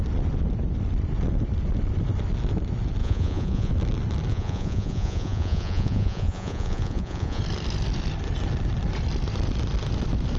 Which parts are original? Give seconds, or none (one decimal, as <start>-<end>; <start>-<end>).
0.0-3.0; 3.7-4.3; 7.4-10.4

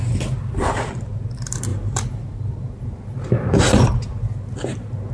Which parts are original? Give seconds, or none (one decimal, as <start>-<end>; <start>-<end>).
0.0-5.1

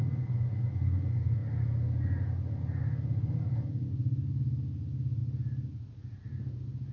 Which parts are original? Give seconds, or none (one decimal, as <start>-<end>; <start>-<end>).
0.0-3.8; 4.4-6.9